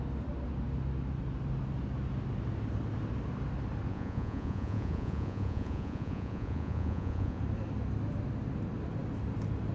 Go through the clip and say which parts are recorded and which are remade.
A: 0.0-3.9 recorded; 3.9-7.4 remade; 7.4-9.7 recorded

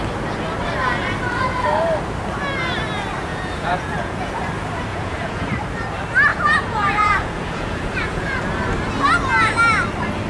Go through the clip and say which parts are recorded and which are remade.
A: 0.0-3.3 recorded; 3.3-4.4 remade; 4.4-4.9 recorded; 4.9-5.5 remade; 5.5-6.3 recorded; 6.3-8.4 remade; 8.4-10.3 recorded

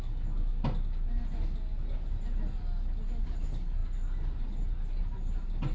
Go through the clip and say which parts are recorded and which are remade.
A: 0.0-5.7 recorded

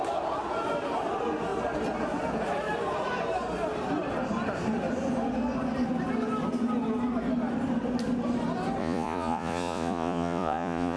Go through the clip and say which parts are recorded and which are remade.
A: 0.0-8.8 recorded; 8.8-11.0 remade

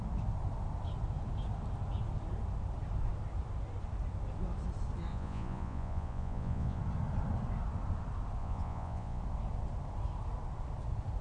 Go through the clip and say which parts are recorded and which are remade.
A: 0.0-5.1 recorded; 5.1-6.8 remade; 6.8-8.4 recorded; 8.4-9.2 remade; 9.2-11.2 recorded

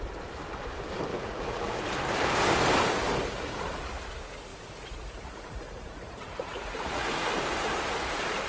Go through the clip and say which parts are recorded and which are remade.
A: 0.0-1.1 recorded; 1.1-1.8 remade; 1.8-4.5 recorded; 4.5-7.3 remade; 7.3-8.5 recorded